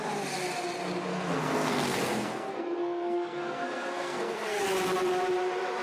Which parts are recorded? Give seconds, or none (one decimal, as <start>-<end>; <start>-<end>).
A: 0.0-1.1; 4.6-5.8